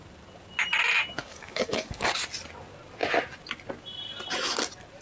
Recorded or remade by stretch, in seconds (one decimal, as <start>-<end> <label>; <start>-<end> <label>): 0.0-1.2 recorded; 1.2-2.1 remade; 2.1-5.0 recorded